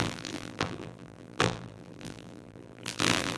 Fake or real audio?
fake